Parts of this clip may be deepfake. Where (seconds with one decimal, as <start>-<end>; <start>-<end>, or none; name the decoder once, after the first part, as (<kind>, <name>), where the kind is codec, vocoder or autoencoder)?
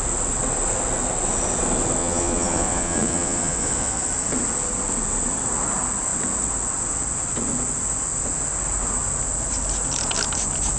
2.0-4.0 (vocoder, Vocos)